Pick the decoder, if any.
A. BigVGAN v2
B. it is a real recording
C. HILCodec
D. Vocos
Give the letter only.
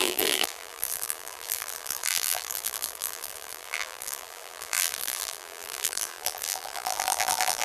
A